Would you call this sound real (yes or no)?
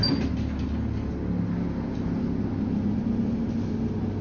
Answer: yes